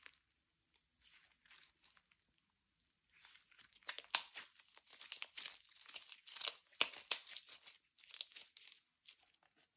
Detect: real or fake real